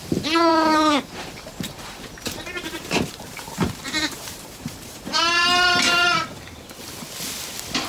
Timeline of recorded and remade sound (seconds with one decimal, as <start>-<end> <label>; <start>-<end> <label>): 0.0-0.5 recorded; 0.5-5.2 remade; 5.2-7.9 recorded